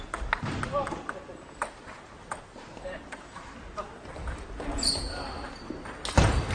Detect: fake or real real